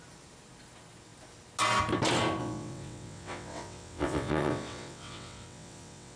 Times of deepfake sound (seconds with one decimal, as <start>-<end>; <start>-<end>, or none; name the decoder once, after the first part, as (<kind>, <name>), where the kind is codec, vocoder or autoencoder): 2.4-6.2 (vocoder, WaveNeXt)